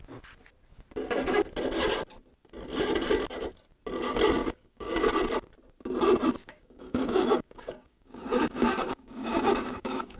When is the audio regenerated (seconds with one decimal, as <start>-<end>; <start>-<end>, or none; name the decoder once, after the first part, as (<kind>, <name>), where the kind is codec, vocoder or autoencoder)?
4.4-5.0 (codec, DAC); 6.4-10.2